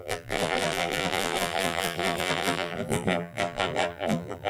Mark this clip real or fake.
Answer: fake